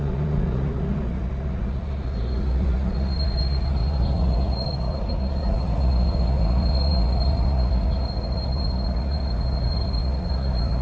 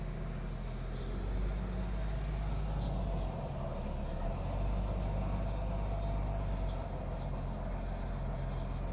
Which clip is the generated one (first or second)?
first